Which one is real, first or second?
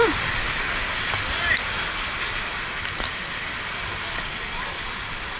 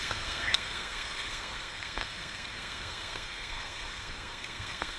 first